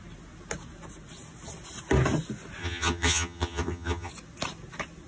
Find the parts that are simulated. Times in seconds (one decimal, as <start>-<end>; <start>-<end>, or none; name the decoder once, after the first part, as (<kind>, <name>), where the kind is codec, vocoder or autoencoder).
2.6-4.1 (vocoder, HiFi-GAN)